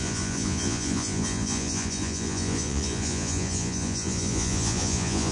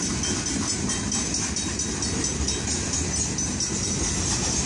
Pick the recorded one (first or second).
second